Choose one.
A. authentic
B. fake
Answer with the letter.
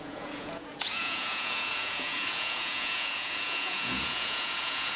B